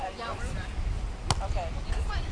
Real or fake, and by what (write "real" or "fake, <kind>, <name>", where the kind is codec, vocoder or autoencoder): real